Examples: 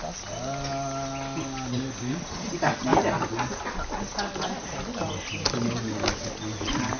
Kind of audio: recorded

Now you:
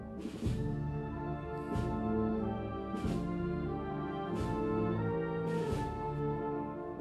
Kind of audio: recorded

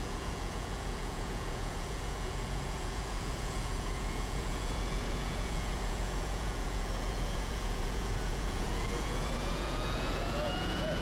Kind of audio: remade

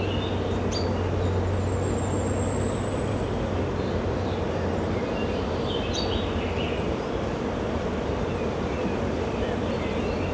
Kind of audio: recorded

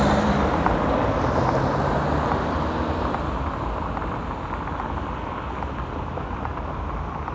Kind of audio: recorded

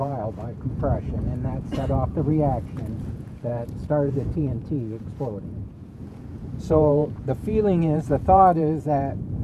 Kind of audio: remade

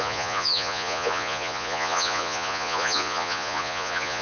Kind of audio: remade